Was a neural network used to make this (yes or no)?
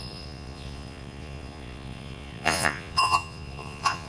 yes